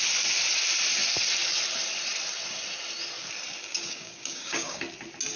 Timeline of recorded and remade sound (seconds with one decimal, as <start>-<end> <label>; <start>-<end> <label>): 0.0-3.7 recorded; 3.7-4.8 remade; 4.8-5.4 recorded